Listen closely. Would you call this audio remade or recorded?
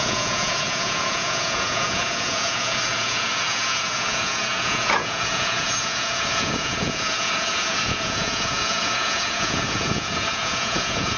remade